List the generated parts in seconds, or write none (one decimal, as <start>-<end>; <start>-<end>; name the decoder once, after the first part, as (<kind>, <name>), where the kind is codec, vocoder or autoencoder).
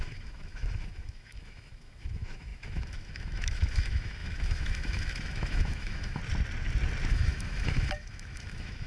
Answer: 0.0-6.2 (autoencoder, DAC-VAE); 7.1-8.9